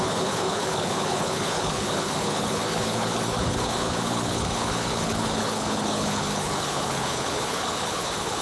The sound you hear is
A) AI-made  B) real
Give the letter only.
A